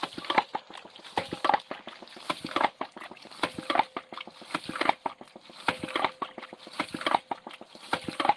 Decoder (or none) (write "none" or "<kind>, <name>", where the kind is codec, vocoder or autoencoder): none